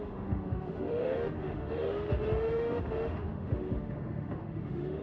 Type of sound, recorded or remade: remade